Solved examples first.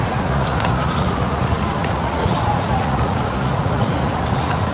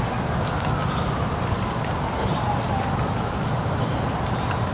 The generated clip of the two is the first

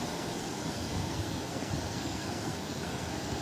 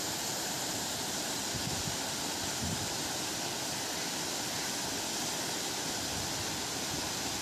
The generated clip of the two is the first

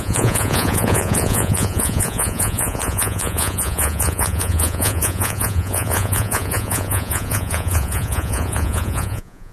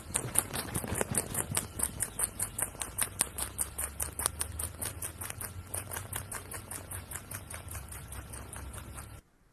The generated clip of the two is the first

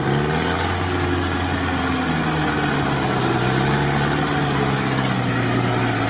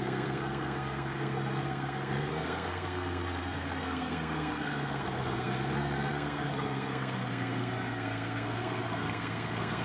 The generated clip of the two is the second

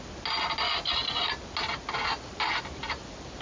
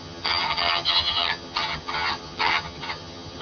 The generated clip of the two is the second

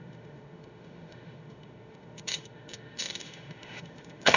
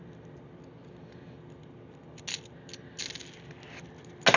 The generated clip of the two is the first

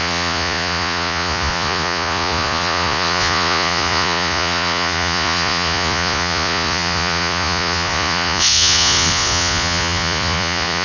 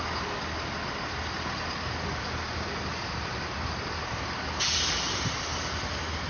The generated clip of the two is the first